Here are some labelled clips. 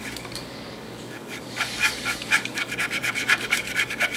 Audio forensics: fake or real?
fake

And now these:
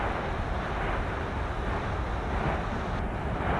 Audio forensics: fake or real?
real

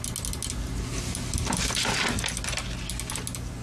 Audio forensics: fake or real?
real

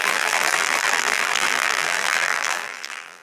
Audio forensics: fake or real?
fake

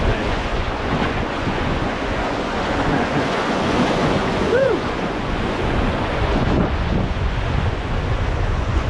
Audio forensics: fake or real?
fake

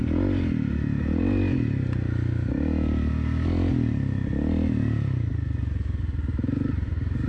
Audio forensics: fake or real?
real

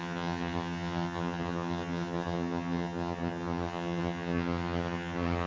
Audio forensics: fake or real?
fake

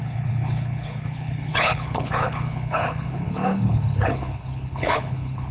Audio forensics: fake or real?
fake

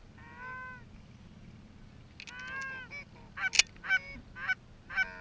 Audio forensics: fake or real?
real